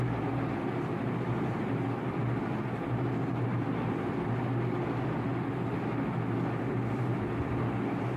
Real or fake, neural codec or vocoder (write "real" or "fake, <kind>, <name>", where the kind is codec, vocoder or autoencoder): real